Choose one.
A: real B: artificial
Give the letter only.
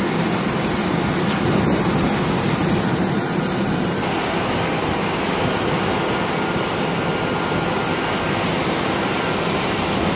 A